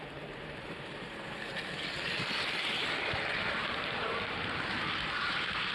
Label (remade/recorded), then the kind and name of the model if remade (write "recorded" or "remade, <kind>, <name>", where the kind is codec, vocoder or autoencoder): remade, vocoder, BigVGAN v2